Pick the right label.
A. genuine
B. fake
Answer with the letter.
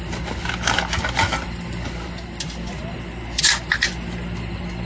A